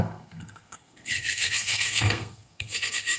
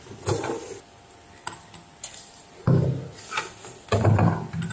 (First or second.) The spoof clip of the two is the first